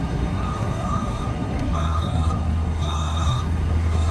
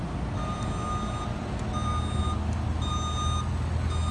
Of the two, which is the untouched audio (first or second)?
second